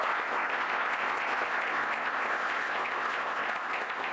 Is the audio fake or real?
fake